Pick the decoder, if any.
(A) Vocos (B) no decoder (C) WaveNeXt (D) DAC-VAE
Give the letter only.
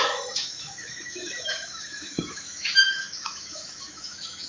D